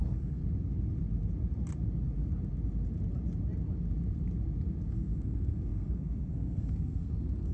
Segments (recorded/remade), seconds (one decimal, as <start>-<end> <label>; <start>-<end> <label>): 0.0-0.4 remade; 0.4-4.9 recorded; 4.9-7.5 remade